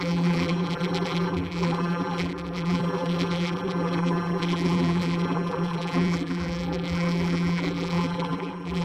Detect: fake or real fake